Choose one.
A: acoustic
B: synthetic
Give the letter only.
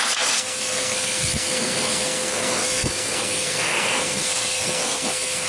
B